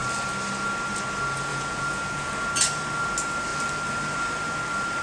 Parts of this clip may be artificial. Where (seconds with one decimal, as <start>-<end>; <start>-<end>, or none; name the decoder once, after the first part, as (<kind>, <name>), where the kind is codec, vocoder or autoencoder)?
1.5-2.5 (vocoder, Vocos)